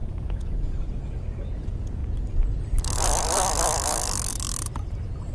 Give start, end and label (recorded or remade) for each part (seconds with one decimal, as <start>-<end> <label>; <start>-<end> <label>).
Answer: 0.0-2.0 remade; 2.0-5.3 recorded